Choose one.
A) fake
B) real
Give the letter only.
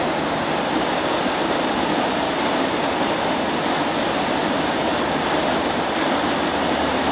B